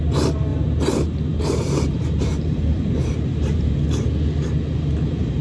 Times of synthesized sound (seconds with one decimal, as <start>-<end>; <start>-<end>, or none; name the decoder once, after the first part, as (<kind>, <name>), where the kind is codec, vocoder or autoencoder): 0.5-3.7 (vocoder, BigVGAN v2)